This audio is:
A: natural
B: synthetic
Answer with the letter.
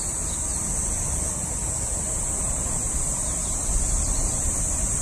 A